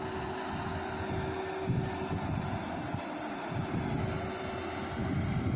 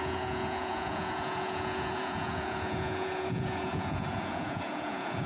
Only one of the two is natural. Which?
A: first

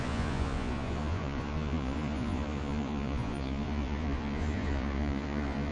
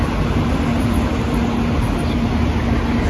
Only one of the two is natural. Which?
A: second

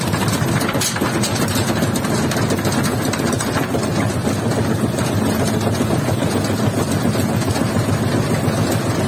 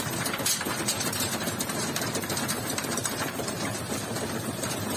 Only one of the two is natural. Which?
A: first